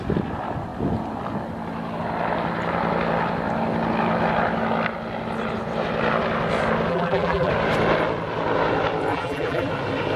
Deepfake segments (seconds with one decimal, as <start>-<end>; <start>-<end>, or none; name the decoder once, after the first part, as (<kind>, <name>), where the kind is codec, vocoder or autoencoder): 6.9-7.5 (vocoder, BigVGAN v2); 9.1-9.7